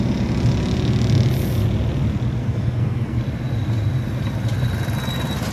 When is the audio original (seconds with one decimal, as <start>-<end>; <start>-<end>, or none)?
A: 0.0-2.4; 3.2-5.5